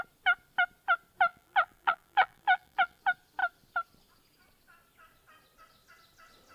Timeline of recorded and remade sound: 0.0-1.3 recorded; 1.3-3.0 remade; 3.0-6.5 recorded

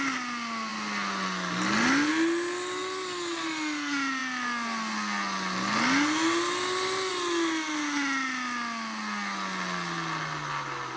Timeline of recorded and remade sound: 0.0-11.0 recorded

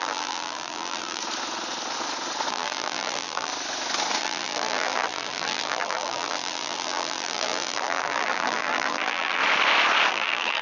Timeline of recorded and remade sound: 0.0-1.2 remade; 1.2-2.5 recorded; 2.5-3.5 remade; 3.5-4.2 recorded; 4.2-9.4 remade; 9.4-10.1 recorded; 10.1-10.6 remade

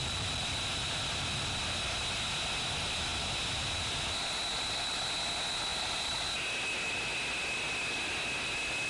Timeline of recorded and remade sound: 0.0-5.7 recorded; 5.7-6.3 remade; 6.3-8.9 recorded

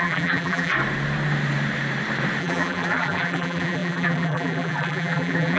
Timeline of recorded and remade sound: 0.0-0.7 remade; 0.7-2.4 recorded; 2.4-5.6 remade

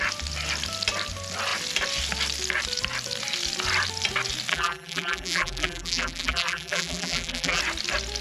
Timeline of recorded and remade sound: 0.0-4.5 recorded; 4.5-7.6 remade; 7.6-8.2 recorded

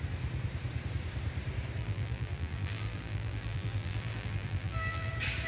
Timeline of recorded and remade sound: 0.0-1.8 recorded; 1.8-5.1 remade; 5.1-5.5 recorded